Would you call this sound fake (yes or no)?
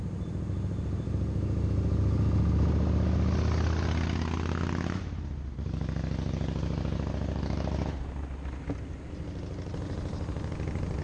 no